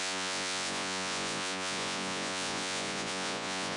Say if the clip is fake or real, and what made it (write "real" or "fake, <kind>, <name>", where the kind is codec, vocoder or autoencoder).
fake, vocoder, Vocos